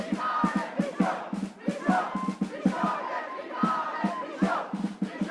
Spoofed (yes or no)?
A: yes